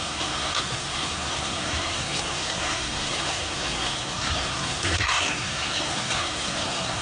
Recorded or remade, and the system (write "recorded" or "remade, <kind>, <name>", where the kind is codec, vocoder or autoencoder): remade, codec, SNAC